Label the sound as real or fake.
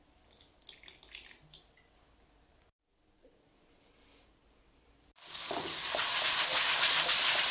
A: real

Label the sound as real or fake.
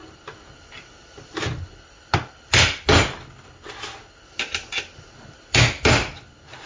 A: real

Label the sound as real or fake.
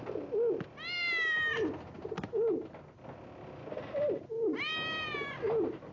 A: real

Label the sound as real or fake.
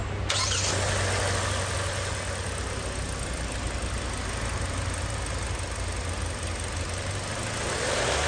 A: real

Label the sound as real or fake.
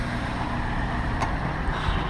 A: real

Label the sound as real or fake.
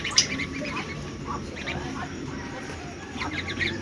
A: fake